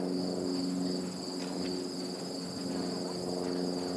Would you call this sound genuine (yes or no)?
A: yes